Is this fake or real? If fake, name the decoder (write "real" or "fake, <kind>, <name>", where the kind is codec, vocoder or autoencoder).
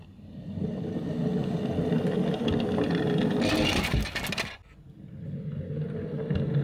real